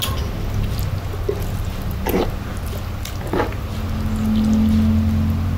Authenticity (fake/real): real